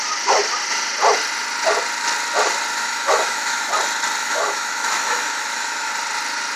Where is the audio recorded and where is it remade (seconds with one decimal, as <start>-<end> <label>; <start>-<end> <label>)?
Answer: 0.0-2.7 recorded; 2.7-3.7 remade; 3.7-4.2 recorded; 4.2-5.9 remade; 5.9-6.6 recorded